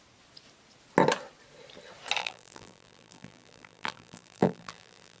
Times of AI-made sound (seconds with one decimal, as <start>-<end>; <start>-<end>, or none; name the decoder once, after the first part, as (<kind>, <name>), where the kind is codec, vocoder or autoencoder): 2.2-5.2 (vocoder, BigVGAN v2)